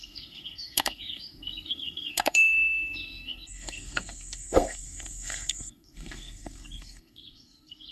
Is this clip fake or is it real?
fake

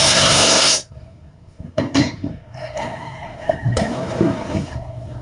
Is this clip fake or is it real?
fake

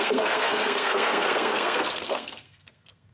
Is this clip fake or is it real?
fake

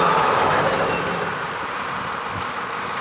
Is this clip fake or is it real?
real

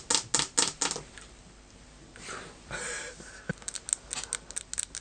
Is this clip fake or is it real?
real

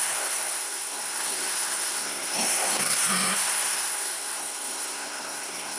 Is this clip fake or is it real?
fake